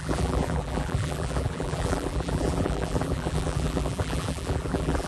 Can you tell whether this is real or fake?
fake